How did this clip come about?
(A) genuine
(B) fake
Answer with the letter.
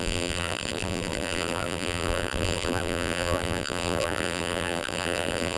B